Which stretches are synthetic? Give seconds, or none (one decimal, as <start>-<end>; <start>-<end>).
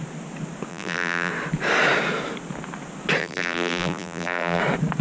0.7-1.3; 3.2-4.6